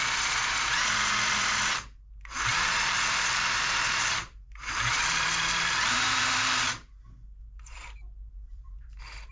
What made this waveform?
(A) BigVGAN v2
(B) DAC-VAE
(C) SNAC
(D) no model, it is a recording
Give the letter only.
A